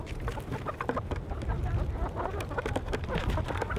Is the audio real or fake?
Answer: real